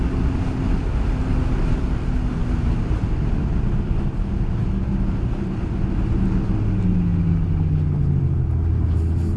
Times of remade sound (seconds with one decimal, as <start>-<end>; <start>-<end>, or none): none